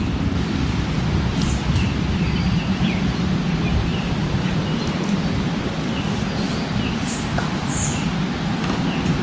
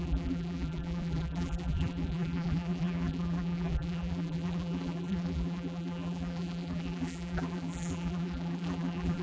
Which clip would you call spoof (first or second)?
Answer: second